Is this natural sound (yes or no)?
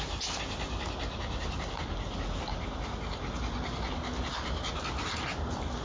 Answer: yes